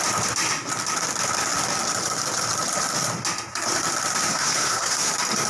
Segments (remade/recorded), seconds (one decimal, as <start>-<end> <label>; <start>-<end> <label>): 0.0-4.3 recorded; 4.3-5.1 remade; 5.1-5.5 recorded

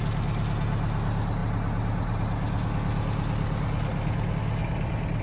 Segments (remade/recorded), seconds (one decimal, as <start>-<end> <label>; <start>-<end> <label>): 0.0-5.2 recorded

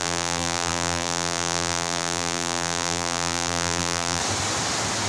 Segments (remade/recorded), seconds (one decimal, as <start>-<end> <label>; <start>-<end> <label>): 0.0-4.2 remade; 4.2-5.1 recorded

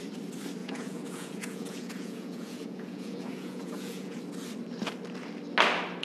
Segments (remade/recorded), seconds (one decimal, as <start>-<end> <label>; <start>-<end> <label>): 0.0-0.6 recorded; 0.6-4.2 remade; 4.2-6.0 recorded

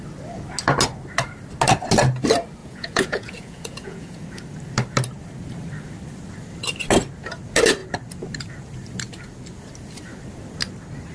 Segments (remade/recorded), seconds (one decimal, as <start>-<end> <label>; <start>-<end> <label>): 0.0-2.6 recorded; 2.6-4.2 remade; 4.2-11.1 recorded

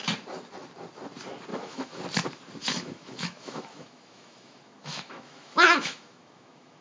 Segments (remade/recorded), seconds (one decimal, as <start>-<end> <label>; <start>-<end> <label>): 0.0-1.5 recorded; 1.5-2.0 remade; 2.0-2.6 recorded; 2.6-6.8 remade